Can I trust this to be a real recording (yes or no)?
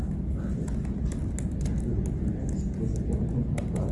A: yes